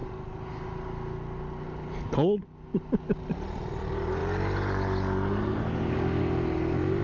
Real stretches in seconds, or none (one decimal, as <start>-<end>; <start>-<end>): 0.0-7.0